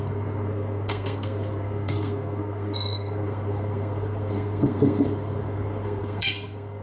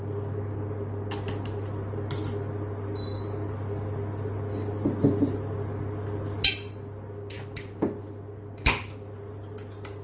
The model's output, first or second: first